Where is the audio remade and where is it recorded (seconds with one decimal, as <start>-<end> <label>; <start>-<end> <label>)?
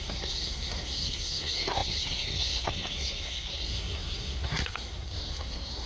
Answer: 0.0-5.9 remade